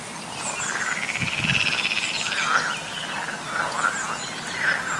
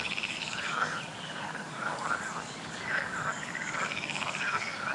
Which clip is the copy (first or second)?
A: second